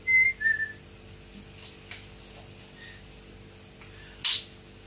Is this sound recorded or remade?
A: recorded